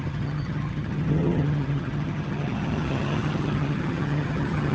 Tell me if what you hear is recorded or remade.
remade